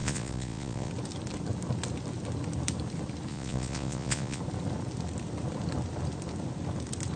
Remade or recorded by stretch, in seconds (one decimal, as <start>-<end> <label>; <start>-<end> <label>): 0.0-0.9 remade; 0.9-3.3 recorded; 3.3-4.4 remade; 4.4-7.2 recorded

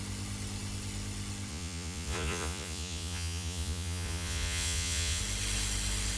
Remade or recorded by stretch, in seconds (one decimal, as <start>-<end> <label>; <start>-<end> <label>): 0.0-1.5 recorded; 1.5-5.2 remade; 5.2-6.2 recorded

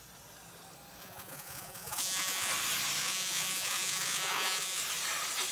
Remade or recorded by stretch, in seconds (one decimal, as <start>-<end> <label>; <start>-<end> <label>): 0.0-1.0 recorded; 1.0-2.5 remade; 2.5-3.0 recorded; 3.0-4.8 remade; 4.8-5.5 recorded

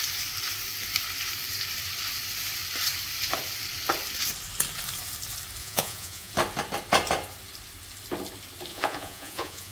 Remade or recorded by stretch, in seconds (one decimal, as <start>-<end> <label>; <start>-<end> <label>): 0.0-5.6 recorded; 5.6-6.3 remade; 6.3-8.7 recorded; 8.7-9.7 remade

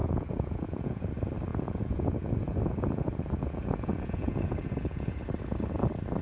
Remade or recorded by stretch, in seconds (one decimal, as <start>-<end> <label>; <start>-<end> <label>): 0.0-1.1 remade; 1.1-1.5 recorded; 1.5-5.2 remade; 5.2-6.2 recorded

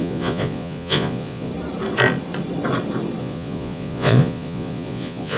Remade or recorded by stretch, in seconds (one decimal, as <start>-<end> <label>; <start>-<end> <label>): 0.0-1.5 remade; 1.5-3.2 recorded; 3.2-5.4 remade

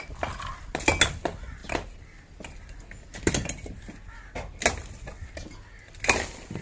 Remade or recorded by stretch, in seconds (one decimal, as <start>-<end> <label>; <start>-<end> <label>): 0.0-6.6 recorded